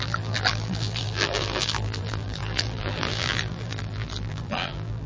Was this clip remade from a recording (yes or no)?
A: yes